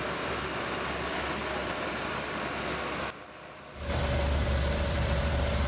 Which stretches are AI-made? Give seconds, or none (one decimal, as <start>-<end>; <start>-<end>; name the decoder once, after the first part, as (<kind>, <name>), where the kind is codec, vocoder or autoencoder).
1.6-3.2 (vocoder, BigVGAN v2); 4.4-5.3